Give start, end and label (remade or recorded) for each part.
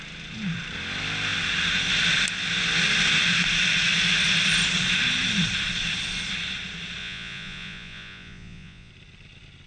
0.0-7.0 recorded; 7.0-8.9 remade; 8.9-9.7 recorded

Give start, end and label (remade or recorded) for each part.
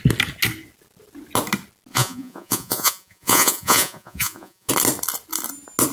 0.0-1.9 recorded; 1.9-4.7 remade; 4.7-5.9 recorded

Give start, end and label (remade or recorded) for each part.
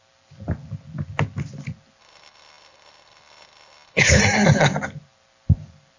0.0-2.0 recorded; 2.0-4.2 remade; 4.2-6.0 recorded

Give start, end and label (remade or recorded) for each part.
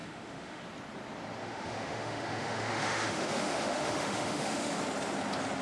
0.0-0.6 remade; 0.6-1.4 recorded; 1.4-4.8 remade; 4.8-5.6 recorded